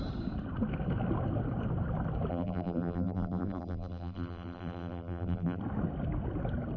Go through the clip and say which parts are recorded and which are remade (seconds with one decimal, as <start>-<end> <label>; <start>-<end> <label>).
0.0-2.3 recorded; 2.3-5.6 remade; 5.6-6.8 recorded